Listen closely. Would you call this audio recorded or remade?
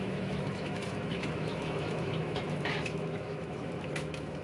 remade